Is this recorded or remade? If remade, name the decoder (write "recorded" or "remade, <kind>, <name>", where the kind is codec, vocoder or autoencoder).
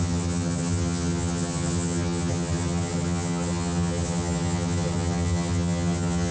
remade, vocoder, HiFi-GAN